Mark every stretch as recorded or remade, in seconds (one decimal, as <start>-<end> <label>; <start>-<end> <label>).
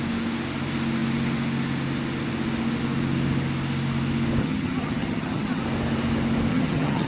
0.0-4.4 recorded; 4.4-5.6 remade; 5.6-6.5 recorded; 6.5-7.1 remade